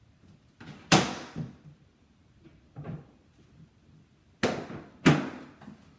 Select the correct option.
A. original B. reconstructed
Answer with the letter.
A